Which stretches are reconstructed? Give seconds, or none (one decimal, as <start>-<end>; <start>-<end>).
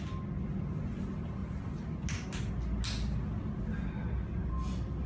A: none